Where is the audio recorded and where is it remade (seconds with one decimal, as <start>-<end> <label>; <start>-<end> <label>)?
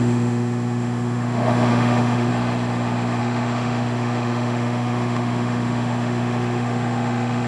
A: 0.0-2.3 remade; 2.3-3.2 recorded; 3.2-7.5 remade